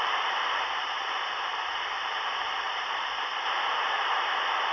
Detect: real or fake fake